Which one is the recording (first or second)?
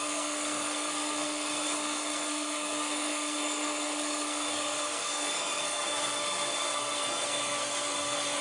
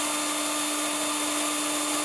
second